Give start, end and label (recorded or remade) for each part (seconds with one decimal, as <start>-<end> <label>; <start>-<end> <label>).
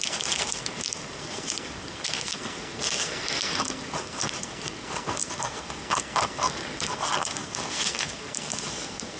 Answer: 0.0-9.2 remade